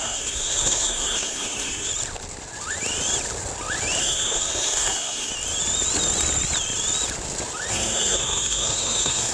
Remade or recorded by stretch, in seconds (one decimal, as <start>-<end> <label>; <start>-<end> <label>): 0.0-1.9 remade; 1.9-4.0 recorded; 4.0-5.3 remade; 5.3-7.7 recorded; 7.7-9.3 remade